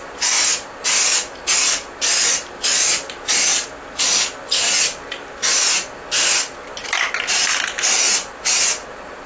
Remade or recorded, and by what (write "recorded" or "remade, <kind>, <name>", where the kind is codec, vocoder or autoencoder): recorded